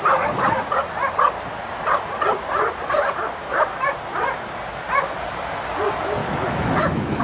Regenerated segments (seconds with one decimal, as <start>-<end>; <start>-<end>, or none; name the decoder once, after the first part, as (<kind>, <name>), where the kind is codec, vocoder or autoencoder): 6.2-7.2 (autoencoder, DAC-VAE)